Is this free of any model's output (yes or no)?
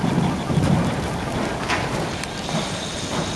yes